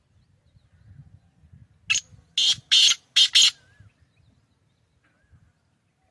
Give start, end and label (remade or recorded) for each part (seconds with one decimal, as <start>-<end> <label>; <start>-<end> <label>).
0.0-6.1 recorded